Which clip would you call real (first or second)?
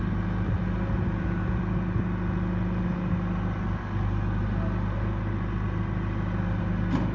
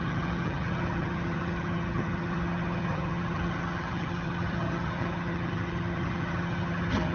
first